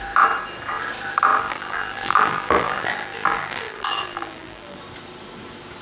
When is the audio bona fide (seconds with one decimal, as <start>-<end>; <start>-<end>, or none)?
0.0-1.3; 4.8-5.8